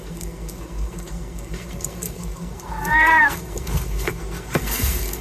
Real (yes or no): no